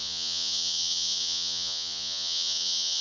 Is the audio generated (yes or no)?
yes